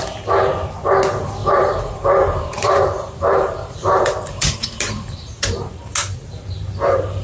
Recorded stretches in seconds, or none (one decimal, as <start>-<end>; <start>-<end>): 0.0-1.4; 5.7-7.2